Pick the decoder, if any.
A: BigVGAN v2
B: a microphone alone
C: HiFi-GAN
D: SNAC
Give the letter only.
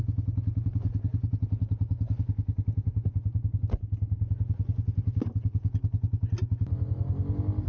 B